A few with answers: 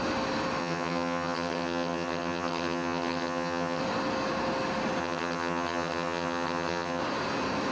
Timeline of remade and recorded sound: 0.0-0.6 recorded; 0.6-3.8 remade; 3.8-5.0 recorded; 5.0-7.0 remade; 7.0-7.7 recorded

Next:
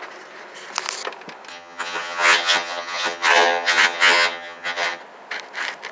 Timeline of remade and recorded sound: 0.0-1.5 recorded; 1.5-5.0 remade; 5.0-5.9 recorded

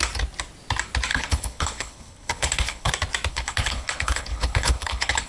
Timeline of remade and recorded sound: 0.0-1.1 recorded; 1.1-2.9 remade; 2.9-3.3 recorded; 3.3-5.3 remade

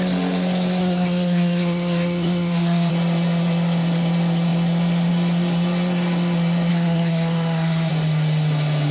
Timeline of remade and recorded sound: 0.0-0.8 recorded; 0.8-2.9 remade; 2.9-6.7 recorded; 6.7-7.9 remade; 7.9-8.9 recorded